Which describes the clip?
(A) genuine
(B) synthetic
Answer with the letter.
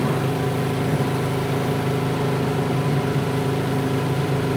A